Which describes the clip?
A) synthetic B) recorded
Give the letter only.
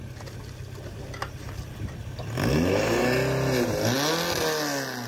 B